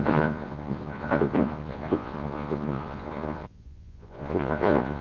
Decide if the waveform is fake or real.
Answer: fake